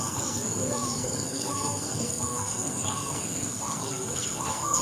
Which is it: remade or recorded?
remade